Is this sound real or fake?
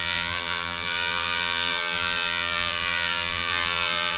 fake